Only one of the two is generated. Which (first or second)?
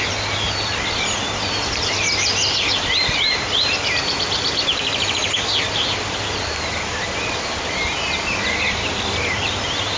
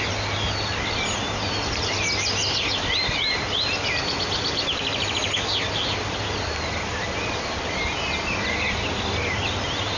first